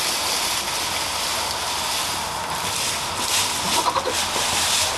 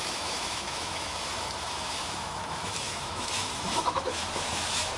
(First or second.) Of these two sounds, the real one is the first